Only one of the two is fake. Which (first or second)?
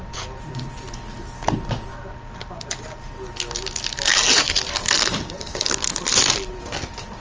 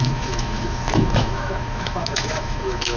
second